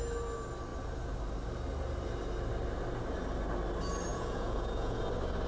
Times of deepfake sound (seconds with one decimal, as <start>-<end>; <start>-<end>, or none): 4.1-5.0